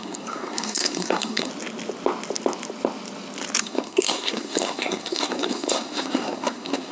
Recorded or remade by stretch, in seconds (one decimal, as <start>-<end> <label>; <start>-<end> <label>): 0.0-1.5 remade; 1.5-3.6 recorded; 3.6-6.9 remade